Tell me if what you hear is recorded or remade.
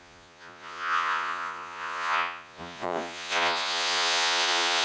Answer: remade